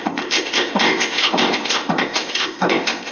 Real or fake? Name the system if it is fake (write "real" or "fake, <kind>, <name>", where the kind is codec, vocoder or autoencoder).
fake, codec, ZipCodec